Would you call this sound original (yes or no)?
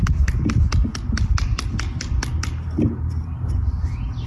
yes